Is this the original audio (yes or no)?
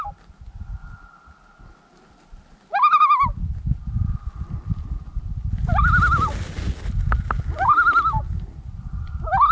yes